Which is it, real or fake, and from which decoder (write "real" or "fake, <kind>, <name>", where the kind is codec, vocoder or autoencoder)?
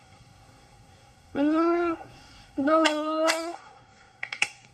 fake, codec, SNAC